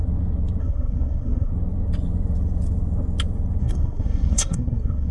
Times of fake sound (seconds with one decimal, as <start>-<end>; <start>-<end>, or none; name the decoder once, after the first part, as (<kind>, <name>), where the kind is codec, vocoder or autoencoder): 0.6-1.5 (codec, SNAC); 3.6-5.1